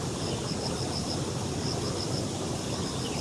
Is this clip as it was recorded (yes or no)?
yes